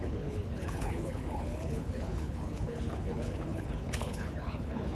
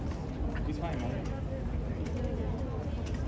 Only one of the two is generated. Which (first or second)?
first